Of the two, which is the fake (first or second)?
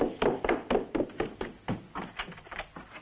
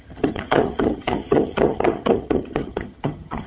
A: second